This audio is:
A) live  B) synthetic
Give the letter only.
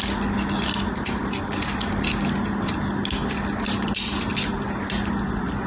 A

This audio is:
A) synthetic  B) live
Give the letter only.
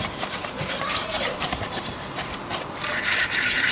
A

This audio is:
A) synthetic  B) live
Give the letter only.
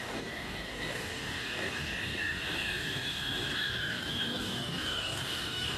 A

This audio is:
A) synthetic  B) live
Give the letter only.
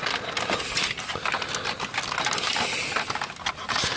B